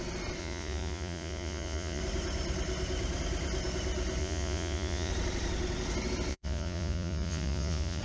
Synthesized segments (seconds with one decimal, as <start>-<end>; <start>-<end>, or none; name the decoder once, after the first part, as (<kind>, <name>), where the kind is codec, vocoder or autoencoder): 0.4-2.0 (vocoder, Vocos); 4.2-5.1; 6.3-8.0